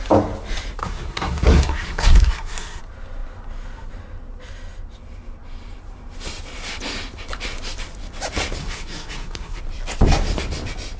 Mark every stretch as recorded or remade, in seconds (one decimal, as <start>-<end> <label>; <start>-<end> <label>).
0.0-0.8 recorded; 0.8-2.8 remade; 2.8-8.6 recorded; 8.6-9.6 remade; 9.6-11.0 recorded